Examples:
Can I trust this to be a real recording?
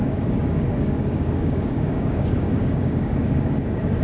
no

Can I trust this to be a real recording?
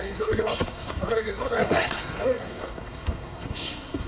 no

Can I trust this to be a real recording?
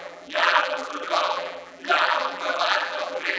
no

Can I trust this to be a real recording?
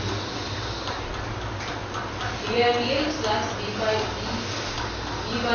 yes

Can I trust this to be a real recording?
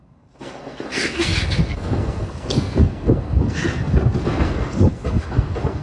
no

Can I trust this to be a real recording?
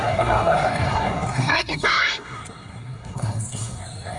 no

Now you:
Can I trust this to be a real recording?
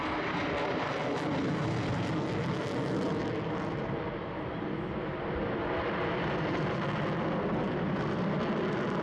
yes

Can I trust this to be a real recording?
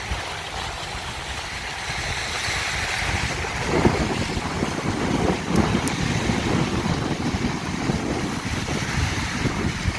yes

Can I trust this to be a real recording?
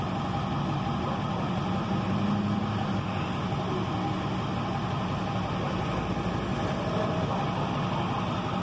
yes